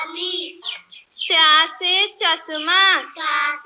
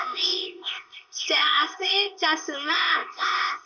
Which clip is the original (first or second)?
first